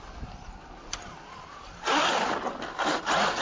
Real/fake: real